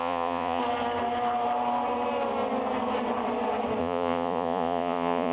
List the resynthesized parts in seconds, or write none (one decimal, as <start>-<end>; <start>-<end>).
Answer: 0.0-0.6; 3.8-5.3